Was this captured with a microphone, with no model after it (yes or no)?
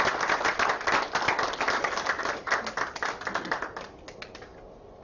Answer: yes